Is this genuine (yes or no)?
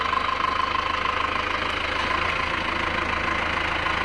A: yes